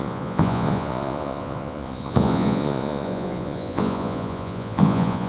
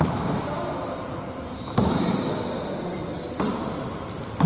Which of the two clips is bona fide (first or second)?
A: second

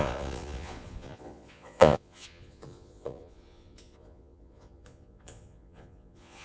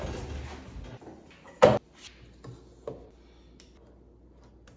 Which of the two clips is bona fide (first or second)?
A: second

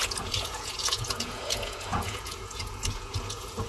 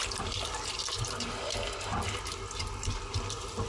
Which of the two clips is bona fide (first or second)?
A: second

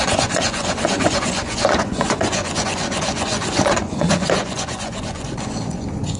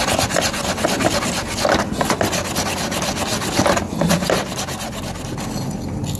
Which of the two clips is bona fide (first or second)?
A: second